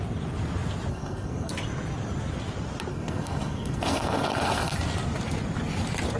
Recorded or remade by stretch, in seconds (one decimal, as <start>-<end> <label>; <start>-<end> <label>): 0.0-0.9 recorded; 0.9-1.5 remade; 1.5-2.9 recorded; 2.9-4.8 remade; 4.8-6.2 recorded